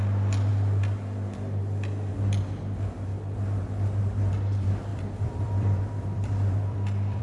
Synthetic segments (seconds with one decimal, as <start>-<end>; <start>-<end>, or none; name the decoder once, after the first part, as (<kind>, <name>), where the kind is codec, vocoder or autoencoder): 4.9-7.2 (vocoder, BigVGAN v2)